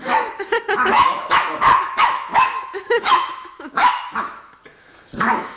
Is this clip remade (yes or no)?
yes